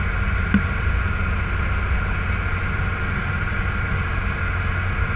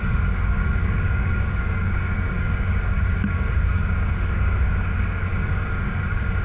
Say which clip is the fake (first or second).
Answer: second